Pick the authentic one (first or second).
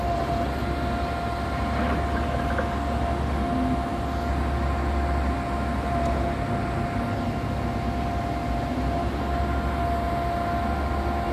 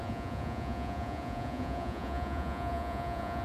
first